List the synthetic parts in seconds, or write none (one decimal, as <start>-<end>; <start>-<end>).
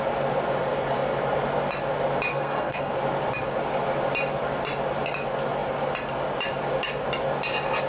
2.3-2.9